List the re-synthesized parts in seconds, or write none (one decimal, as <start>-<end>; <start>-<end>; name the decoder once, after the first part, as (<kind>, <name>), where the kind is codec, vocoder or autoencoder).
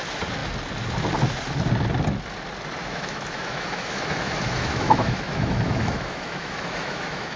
2.8-7.4 (autoencoder, DAC-VAE)